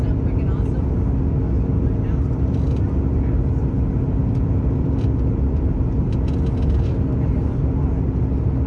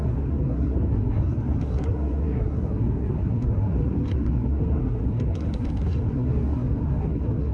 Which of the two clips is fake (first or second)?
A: second